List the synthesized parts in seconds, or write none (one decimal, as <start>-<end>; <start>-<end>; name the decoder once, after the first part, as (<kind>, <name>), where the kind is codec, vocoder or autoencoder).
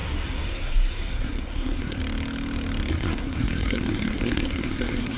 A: 0.0-2.0 (codec, SNAC); 2.9-5.2